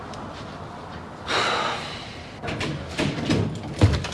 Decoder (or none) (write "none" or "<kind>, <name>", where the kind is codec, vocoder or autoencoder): none